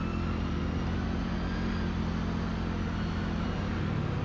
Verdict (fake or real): real